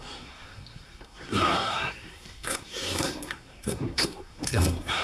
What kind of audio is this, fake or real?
fake